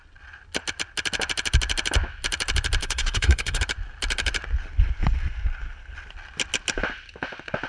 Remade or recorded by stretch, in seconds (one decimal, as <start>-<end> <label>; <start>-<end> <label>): 0.0-2.8 recorded; 2.8-3.6 remade; 3.6-7.7 recorded